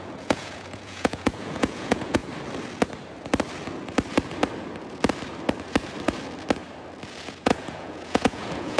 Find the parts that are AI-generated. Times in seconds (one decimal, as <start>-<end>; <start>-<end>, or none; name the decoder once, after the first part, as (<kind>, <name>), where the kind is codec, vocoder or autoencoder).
0.0-2.2 (vocoder, Vocos); 7.3-8.8